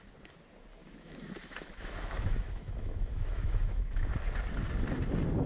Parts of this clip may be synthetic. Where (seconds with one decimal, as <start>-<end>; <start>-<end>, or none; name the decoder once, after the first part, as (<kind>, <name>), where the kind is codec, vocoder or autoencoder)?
0.8-4.1 (autoencoder, DAC-VAE)